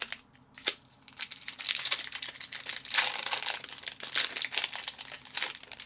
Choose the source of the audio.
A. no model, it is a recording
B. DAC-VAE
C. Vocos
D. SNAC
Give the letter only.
A